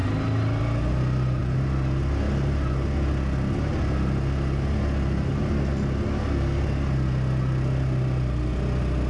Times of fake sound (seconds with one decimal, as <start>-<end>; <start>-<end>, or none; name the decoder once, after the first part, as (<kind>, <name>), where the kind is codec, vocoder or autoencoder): none